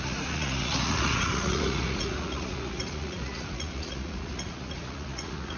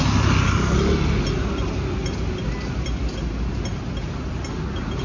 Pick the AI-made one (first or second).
first